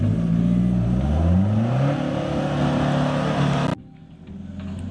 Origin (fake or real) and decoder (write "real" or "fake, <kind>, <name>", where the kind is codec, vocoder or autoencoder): real